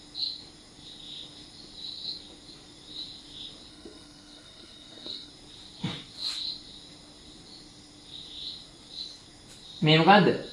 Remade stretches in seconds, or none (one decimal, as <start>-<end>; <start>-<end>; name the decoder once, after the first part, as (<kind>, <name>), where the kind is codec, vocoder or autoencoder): 3.7-5.3 (codec, SNAC)